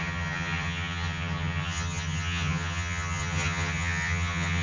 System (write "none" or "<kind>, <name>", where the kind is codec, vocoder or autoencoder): vocoder, HiFi-GAN